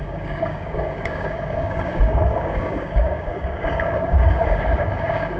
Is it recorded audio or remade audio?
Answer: remade